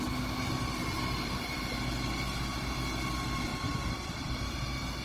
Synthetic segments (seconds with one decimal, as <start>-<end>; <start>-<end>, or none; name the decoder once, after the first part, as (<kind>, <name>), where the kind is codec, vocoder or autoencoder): 0.8-1.6 (vocoder, BigVGAN v2); 3.5-4.6